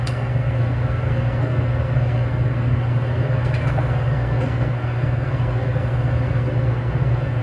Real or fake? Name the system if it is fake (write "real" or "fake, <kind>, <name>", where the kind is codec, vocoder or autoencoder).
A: fake, codec, SNAC